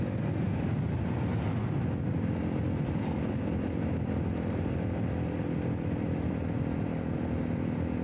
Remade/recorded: recorded